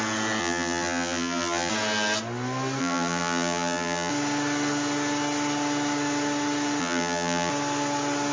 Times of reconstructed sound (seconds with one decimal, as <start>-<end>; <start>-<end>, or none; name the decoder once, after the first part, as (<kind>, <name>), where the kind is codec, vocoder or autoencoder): 0.4-1.7 (vocoder, BigVGAN v2); 2.8-4.1; 6.8-7.5